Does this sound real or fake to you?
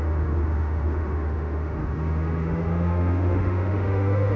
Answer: fake